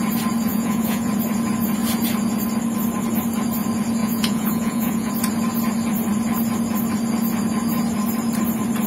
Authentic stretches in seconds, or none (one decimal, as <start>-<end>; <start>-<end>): 0.0-0.5; 1.1-4.0; 5.1-8.9